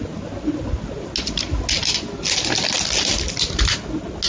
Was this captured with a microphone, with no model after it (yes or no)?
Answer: yes